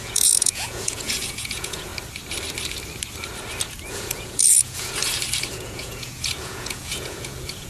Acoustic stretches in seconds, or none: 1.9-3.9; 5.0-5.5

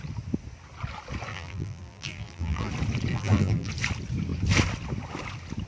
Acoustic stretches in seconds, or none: 0.0-1.3; 2.7-3.1; 3.7-5.7

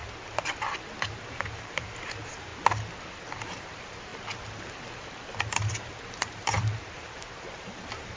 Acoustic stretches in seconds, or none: 0.0-1.0; 2.5-3.4; 4.1-5.7

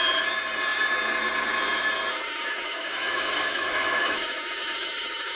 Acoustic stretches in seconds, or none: 0.0-2.1

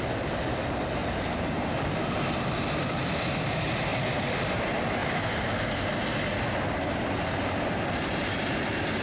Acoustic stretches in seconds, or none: 0.0-9.0

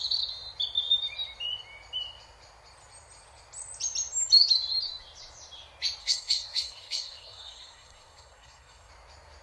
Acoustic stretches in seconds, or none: 0.0-6.0; 8.9-9.4